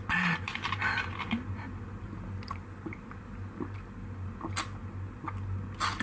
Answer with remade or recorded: recorded